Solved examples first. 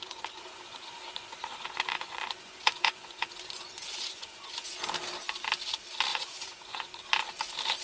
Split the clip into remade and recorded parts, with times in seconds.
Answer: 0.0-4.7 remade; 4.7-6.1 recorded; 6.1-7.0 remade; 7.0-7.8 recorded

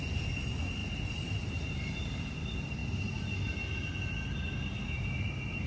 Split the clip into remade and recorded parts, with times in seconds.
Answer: 0.0-2.8 remade; 2.8-4.4 recorded; 4.4-5.7 remade

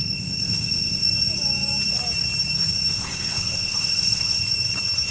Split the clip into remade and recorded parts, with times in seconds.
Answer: 0.0-1.1 remade; 1.1-2.9 recorded; 2.9-4.4 remade; 4.4-5.1 recorded

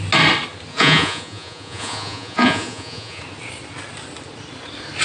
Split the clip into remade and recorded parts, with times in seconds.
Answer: 0.0-0.7 recorded; 0.7-3.2 remade; 3.2-5.0 recorded

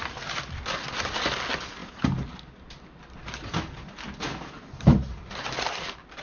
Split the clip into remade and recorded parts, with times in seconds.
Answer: 0.0-6.2 recorded